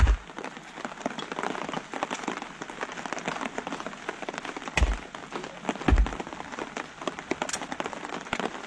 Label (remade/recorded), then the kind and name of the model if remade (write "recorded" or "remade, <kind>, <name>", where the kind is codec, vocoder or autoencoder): recorded